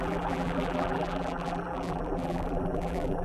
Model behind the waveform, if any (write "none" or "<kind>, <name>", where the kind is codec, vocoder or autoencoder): vocoder, BigVGAN v2